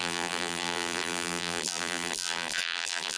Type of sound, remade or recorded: remade